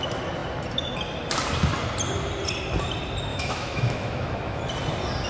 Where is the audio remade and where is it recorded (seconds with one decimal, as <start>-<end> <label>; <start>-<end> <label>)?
0.0-3.3 recorded; 3.3-4.6 remade; 4.6-5.3 recorded